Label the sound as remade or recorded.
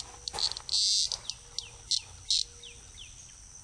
recorded